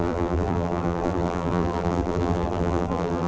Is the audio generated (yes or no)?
yes